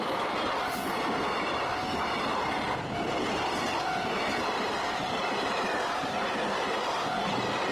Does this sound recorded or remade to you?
remade